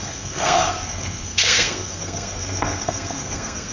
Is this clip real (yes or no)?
no